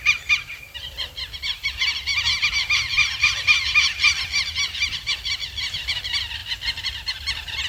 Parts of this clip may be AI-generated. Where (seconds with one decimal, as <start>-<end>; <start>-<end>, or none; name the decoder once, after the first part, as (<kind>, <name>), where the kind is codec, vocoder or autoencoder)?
0.0-7.7 (vocoder, BigVGAN v2)